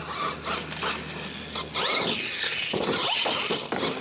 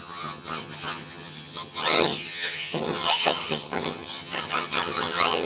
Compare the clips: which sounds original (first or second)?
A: first